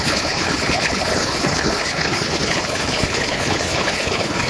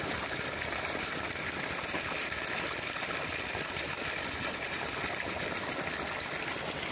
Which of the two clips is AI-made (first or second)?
first